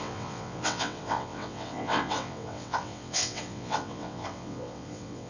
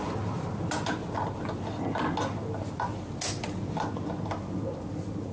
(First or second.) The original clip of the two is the second